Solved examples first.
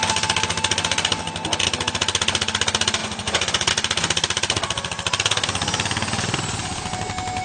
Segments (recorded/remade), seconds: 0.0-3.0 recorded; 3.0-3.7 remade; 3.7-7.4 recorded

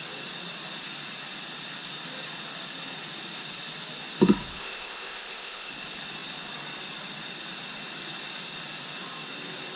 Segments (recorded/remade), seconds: 0.0-4.6 recorded; 4.6-5.7 remade; 5.7-9.8 recorded

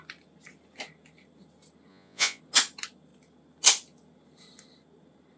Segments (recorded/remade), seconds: 0.0-1.9 recorded; 1.9-2.4 remade; 2.4-5.4 recorded

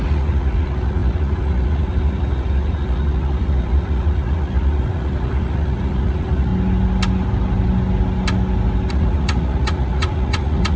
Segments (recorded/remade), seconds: 0.0-6.5 remade; 6.5-8.9 recorded; 8.9-10.8 remade

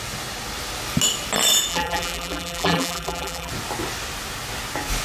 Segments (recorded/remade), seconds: 0.0-1.7 recorded; 1.7-3.5 remade; 3.5-5.0 recorded

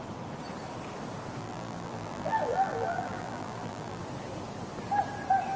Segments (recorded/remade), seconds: 0.0-1.4 recorded; 1.4-4.0 remade; 4.0-5.6 recorded

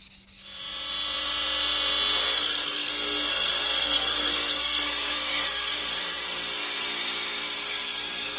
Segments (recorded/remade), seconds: 0.0-2.3 recorded; 2.3-2.9 remade; 2.9-3.3 recorded; 3.3-8.4 remade

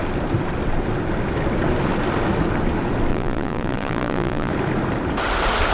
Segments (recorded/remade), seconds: 0.0-3.1 recorded; 3.1-4.5 remade; 4.5-5.7 recorded